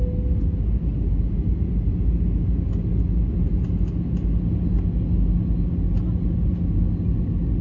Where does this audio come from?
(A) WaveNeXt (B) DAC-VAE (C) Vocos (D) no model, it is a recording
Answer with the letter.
D